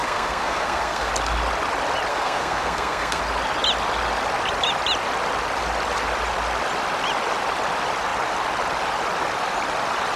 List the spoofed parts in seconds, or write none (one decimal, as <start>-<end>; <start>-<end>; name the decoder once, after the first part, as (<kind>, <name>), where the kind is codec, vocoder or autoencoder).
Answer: 0.0-1.1 (codec, SNAC); 2.1-3.2